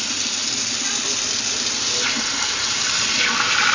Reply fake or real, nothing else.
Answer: real